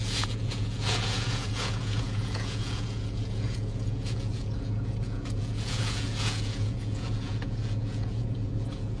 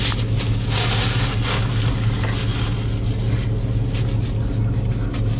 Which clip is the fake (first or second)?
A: first